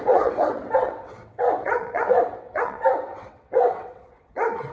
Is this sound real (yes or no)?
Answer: no